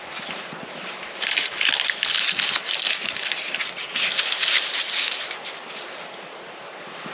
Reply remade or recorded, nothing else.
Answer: recorded